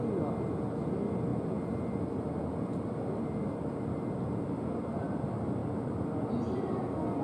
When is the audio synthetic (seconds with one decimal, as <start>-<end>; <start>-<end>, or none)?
none